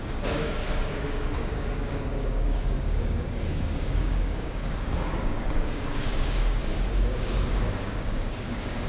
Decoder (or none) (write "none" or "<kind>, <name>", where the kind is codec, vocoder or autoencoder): codec, DAC